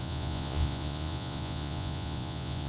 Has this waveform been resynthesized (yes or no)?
yes